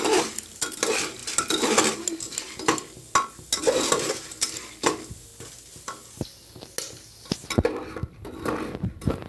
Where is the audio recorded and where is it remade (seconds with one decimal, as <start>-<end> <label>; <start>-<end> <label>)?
0.0-1.2 remade; 1.2-3.6 recorded; 3.6-5.3 remade; 5.3-7.3 recorded; 7.3-9.3 remade